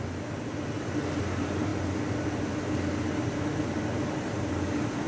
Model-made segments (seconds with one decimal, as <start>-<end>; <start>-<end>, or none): none